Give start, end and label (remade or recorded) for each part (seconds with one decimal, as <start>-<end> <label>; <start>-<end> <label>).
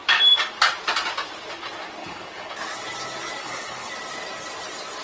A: 0.0-2.0 recorded; 2.0-2.5 remade; 2.5-3.4 recorded; 3.4-3.9 remade; 3.9-5.0 recorded